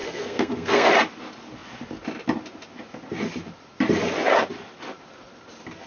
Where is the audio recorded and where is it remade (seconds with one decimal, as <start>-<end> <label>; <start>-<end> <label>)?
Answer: 0.0-0.9 remade; 0.9-5.9 recorded